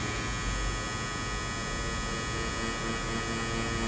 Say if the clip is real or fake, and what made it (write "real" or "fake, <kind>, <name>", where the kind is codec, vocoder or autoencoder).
real